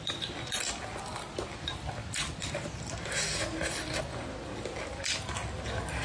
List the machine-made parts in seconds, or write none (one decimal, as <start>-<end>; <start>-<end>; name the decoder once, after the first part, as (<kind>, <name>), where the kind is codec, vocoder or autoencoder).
1.1-4.0 (vocoder, BigVGAN v2)